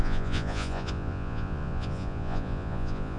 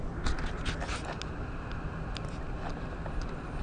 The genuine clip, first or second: second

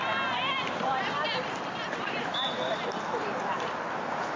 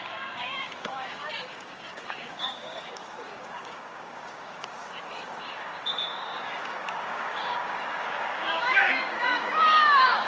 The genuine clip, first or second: first